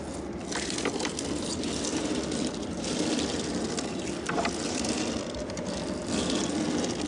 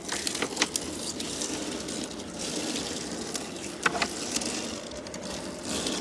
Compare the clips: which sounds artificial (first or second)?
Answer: first